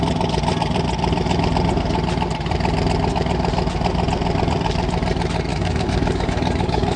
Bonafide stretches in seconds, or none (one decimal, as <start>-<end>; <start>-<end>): 0.0-5.5